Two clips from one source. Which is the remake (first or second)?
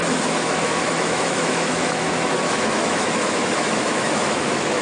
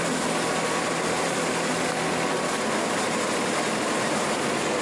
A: first